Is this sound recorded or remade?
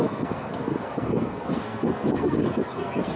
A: remade